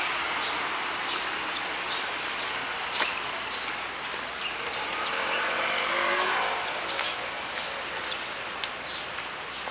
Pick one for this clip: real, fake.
real